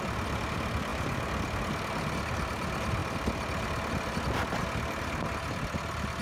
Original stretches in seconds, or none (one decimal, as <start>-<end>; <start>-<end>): 0.0-6.2